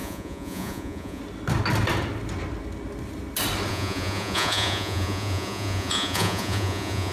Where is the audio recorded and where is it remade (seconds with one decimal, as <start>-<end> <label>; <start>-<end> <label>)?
0.0-1.2 remade; 1.2-3.7 recorded; 3.7-7.1 remade